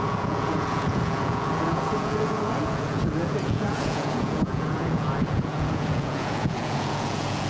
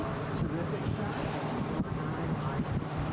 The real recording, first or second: second